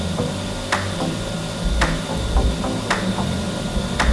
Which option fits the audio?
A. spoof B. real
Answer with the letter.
B